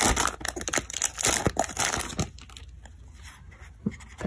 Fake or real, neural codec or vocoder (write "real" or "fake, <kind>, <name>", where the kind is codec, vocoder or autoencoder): real